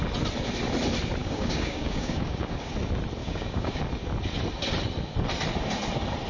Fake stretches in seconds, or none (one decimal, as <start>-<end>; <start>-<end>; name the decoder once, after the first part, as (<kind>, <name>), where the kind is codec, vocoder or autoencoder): 1.2-2.7 (codec, DAC); 3.2-3.8